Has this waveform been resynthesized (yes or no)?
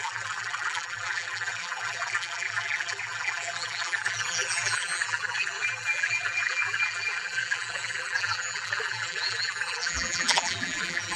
yes